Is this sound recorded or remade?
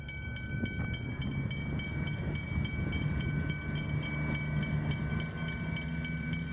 recorded